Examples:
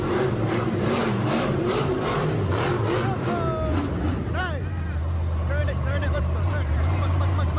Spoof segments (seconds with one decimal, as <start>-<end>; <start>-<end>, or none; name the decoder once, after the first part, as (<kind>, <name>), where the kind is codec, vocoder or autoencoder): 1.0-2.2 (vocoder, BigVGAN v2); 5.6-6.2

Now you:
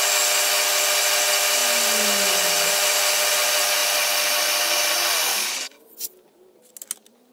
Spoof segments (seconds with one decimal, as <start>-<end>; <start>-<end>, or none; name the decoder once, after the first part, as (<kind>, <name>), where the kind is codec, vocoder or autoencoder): 5.3-5.8 (codec, DAC)

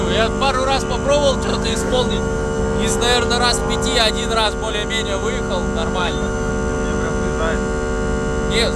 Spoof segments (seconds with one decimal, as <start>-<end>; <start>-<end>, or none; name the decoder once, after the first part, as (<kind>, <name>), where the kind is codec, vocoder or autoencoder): 1.5-2.6 (autoencoder, DAC-VAE); 6.0-6.5

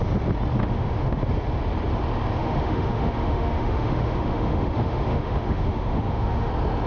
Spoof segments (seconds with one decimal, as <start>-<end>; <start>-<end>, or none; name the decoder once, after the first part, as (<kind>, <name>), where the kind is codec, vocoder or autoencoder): 0.6-1.2 (autoencoder, DAC-VAE); 2.4-6.5